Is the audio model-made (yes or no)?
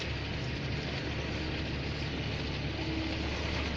no